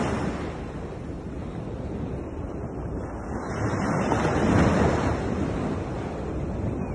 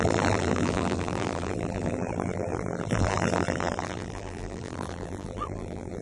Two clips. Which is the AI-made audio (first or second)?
second